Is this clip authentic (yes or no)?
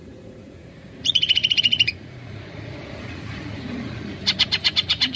no